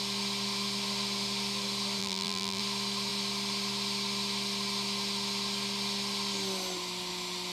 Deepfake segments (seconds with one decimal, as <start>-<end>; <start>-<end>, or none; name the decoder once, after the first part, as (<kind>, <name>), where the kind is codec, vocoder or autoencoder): 2.0-2.6 (vocoder, BigVGAN v2)